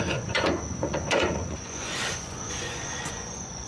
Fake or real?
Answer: fake